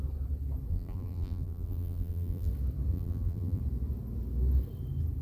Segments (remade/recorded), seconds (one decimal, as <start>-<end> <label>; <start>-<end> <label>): 0.0-0.7 recorded; 0.7-2.5 remade; 2.5-2.9 recorded; 2.9-3.6 remade; 3.6-5.2 recorded